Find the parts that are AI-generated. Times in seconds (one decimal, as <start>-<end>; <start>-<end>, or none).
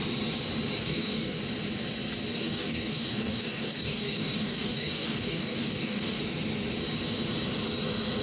0.8-1.4; 2.3-6.2